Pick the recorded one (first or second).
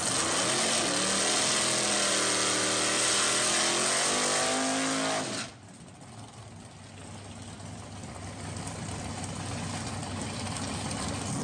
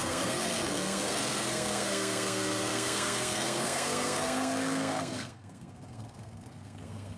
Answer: first